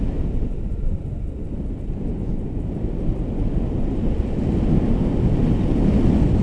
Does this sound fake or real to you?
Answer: real